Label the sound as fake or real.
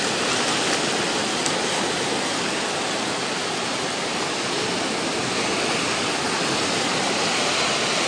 real